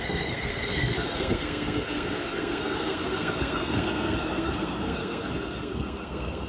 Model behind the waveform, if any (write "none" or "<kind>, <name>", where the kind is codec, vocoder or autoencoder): codec, SNAC